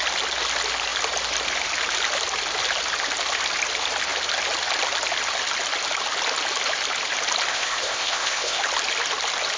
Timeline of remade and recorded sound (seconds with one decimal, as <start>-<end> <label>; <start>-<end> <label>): 0.0-7.5 recorded; 7.5-8.6 remade; 8.6-9.6 recorded